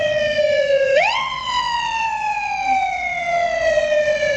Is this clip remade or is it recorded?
remade